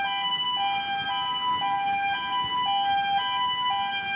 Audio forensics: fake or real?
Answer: real